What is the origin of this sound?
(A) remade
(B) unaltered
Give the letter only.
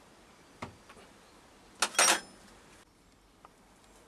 B